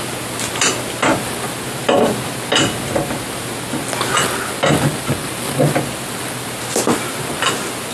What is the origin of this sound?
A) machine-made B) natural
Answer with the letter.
B